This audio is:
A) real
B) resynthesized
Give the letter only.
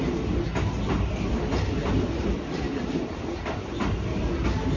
A